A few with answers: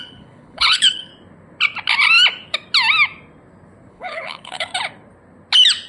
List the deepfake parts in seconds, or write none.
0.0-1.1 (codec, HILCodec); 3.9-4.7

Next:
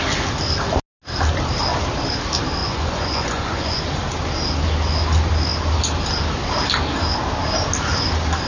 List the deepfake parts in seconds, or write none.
2.6-3.8 (vocoder, Vocos)